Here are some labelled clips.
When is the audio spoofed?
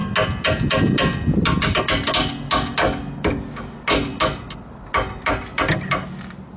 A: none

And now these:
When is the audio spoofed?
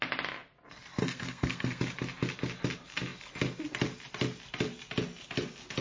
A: 1.0-1.8 (codec, SNAC)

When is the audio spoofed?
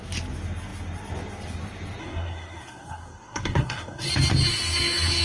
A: 2.0-4.1 (codec, SNAC)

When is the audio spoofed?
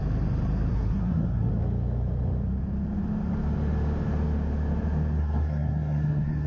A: 0.7-1.5 (codec, SNAC); 5.2-6.5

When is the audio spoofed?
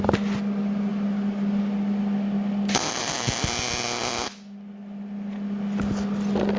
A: none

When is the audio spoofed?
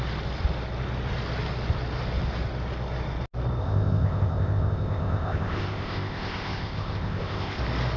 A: 3.6-7.6 (codec, ZipCodec)